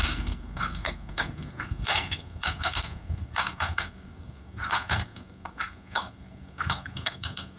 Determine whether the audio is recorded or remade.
remade